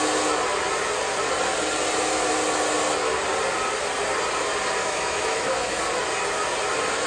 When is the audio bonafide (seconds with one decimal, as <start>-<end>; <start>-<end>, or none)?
0.0-4.8; 5.8-7.1